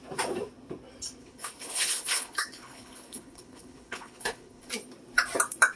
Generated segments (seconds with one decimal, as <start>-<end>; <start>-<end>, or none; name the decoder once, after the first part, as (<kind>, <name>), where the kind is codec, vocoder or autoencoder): 1.2-4.7 (codec, HILCodec)